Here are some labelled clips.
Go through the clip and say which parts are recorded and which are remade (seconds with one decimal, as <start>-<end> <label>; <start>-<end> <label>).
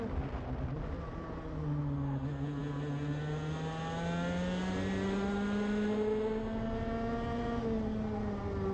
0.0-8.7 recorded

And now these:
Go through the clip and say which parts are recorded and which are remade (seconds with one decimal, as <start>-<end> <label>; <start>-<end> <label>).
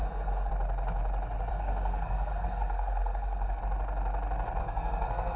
0.0-0.5 remade; 0.5-1.5 recorded; 1.5-3.6 remade; 3.6-4.6 recorded; 4.6-5.4 remade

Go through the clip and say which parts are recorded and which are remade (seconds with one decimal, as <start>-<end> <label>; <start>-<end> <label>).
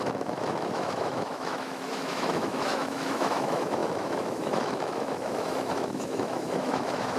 0.0-7.2 remade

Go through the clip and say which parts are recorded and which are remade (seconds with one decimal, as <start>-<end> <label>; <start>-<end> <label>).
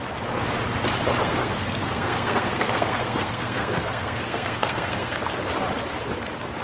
0.0-1.2 recorded; 1.2-5.2 remade; 5.2-6.6 recorded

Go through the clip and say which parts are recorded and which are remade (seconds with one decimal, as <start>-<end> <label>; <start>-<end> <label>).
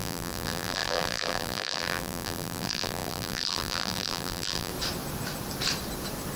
0.0-4.7 remade; 4.7-6.4 recorded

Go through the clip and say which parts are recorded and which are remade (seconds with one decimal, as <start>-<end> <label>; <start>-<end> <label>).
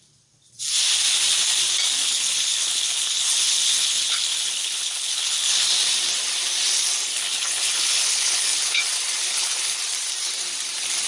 0.0-2.0 recorded; 2.0-5.7 remade; 5.7-7.1 recorded; 7.1-8.8 remade; 8.8-9.3 recorded; 9.3-9.8 remade; 9.8-11.1 recorded